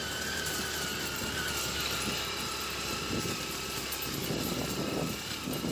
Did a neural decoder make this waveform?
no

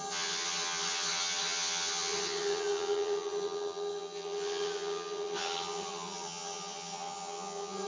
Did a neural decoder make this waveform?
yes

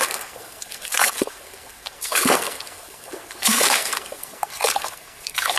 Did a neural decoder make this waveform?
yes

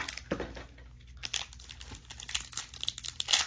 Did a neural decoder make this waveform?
no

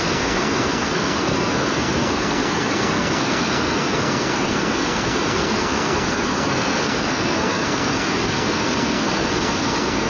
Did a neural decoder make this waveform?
yes